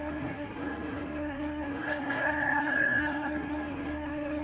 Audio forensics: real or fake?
fake